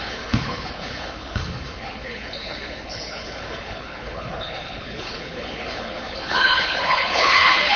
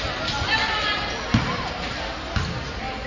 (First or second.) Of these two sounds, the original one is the second